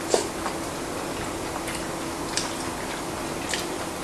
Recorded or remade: recorded